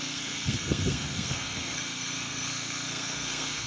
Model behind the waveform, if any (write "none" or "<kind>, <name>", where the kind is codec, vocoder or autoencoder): codec, SNAC